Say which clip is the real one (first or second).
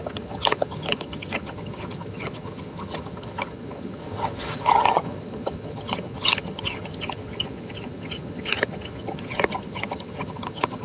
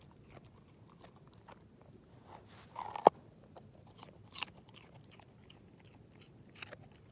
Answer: second